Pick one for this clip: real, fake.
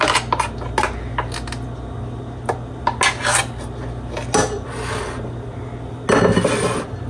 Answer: real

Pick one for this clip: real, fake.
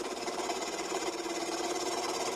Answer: real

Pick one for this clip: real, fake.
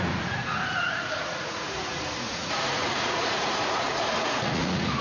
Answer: fake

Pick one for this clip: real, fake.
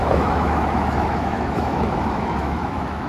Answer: fake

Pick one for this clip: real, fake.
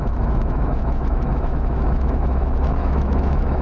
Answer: fake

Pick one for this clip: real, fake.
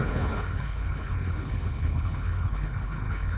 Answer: fake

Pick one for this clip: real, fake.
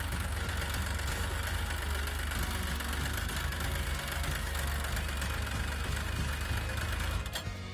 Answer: real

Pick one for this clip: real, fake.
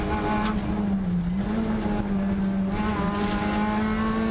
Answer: real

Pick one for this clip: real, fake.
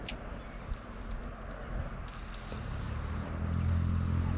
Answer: real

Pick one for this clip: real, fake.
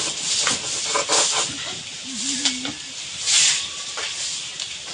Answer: real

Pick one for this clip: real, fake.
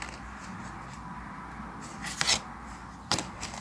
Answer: real